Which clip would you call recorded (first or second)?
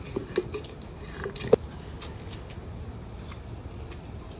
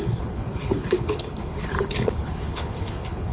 first